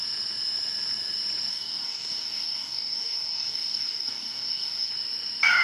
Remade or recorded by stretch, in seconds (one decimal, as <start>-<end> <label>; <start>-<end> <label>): 0.0-1.5 recorded; 1.5-4.9 remade; 4.9-5.6 recorded